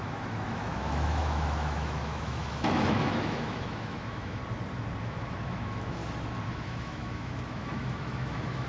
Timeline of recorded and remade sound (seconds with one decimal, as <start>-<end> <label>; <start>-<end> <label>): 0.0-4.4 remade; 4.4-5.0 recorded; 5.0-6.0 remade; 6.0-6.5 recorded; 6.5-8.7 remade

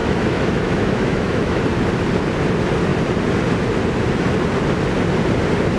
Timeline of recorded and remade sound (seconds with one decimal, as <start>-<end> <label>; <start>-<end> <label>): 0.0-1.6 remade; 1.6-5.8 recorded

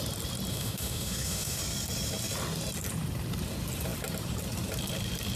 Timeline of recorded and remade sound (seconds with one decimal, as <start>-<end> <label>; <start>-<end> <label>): 0.0-0.5 recorded; 0.5-1.6 remade; 1.6-5.4 recorded

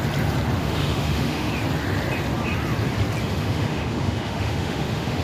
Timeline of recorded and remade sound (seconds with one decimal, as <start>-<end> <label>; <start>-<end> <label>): 0.0-0.6 recorded; 0.6-1.5 remade; 1.5-3.2 recorded; 3.2-5.2 remade

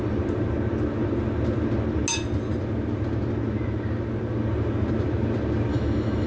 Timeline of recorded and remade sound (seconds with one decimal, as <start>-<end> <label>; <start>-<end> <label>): 0.0-5.7 recorded; 5.7-6.3 remade

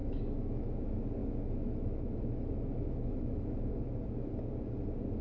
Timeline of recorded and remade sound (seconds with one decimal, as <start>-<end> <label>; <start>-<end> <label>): 0.0-0.7 remade; 0.7-1.2 recorded; 1.2-4.3 remade; 4.3-5.2 recorded

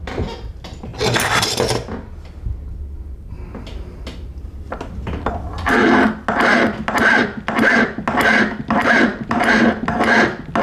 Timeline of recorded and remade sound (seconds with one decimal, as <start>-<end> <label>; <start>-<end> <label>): 0.0-10.6 recorded

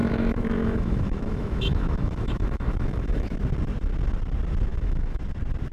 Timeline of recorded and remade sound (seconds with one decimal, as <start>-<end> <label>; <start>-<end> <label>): 0.0-3.4 remade; 3.4-4.7 recorded; 4.7-5.2 remade; 5.2-5.7 recorded